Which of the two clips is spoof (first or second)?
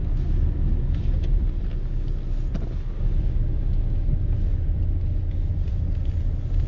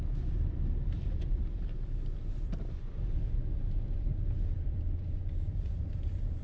second